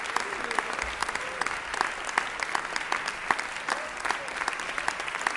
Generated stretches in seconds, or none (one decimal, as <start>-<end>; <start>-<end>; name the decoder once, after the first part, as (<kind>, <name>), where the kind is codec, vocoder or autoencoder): none